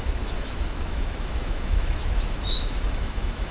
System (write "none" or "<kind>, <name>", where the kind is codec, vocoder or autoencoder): autoencoder, DAC-VAE